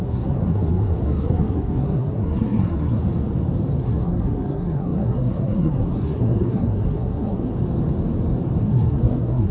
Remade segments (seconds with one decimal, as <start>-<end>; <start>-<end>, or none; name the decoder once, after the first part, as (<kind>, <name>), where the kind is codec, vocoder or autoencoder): 0.0-3.0 (codec, SNAC); 3.8-7.5; 8.6-9.5